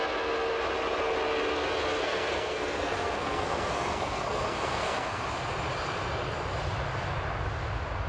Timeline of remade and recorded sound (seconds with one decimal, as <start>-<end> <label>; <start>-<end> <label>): 0.0-2.0 recorded; 2.0-5.2 remade; 5.2-8.1 recorded